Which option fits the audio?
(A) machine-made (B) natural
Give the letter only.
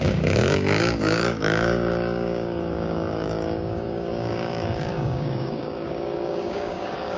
A